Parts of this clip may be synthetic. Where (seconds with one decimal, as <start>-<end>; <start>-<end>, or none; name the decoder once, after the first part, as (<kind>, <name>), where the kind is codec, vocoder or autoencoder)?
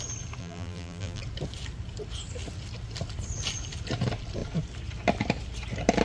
0.4-1.2 (vocoder, BigVGAN v2)